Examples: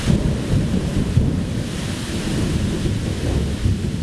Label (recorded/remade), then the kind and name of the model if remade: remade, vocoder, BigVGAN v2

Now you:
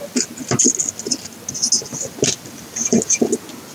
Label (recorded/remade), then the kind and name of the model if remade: recorded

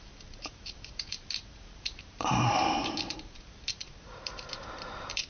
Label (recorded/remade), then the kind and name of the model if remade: remade, vocoder, BigVGAN v2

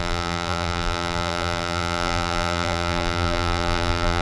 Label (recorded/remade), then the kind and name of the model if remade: remade, vocoder, BigVGAN v2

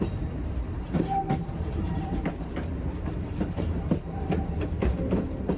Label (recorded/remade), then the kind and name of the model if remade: remade, vocoder, BigVGAN v2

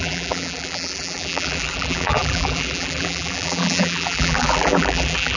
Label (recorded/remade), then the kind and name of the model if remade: remade, vocoder, BigVGAN v2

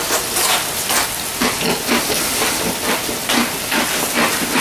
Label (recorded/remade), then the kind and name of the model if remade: recorded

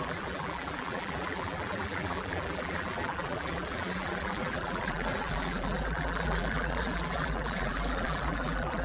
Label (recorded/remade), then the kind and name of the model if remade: remade, vocoder, BigVGAN v2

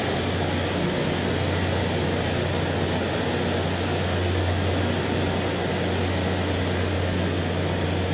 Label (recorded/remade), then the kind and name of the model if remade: recorded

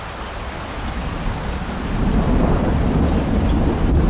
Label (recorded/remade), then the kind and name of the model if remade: remade, vocoder, BigVGAN v2